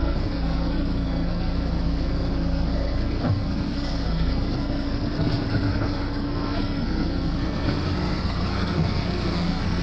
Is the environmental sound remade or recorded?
remade